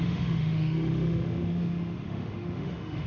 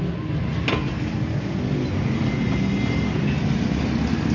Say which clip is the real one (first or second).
second